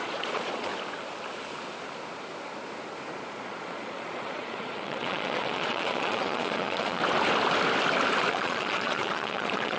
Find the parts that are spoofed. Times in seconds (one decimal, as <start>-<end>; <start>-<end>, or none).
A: 0.0-0.7; 3.1-7.0; 8.3-9.8